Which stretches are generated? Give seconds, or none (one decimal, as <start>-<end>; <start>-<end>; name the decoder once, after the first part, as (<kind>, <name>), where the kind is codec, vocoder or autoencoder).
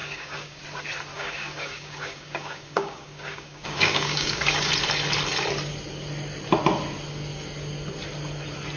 0.0-0.6 (codec, DAC); 1.1-4.7